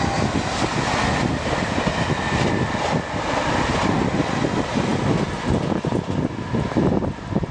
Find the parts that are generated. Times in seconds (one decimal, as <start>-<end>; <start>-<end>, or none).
none